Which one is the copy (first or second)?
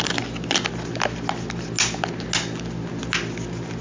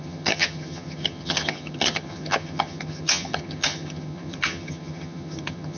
second